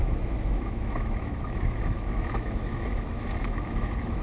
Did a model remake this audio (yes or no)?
yes